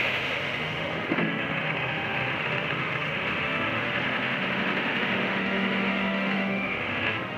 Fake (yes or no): yes